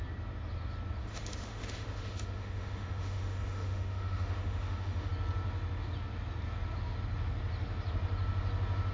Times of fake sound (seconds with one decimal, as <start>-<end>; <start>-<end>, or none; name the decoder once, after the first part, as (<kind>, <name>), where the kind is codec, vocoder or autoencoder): 1.0-5.1 (autoencoder, DAC-VAE)